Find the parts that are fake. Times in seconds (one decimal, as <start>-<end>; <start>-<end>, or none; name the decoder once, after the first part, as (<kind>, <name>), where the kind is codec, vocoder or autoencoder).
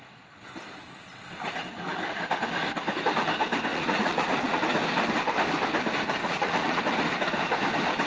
3.7-4.6 (vocoder, Vocos); 6.2-6.8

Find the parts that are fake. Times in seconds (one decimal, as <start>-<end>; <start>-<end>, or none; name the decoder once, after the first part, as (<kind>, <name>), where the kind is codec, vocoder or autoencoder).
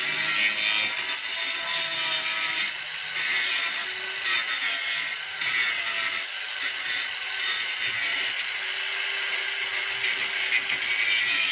none